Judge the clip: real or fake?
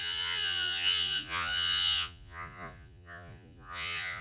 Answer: fake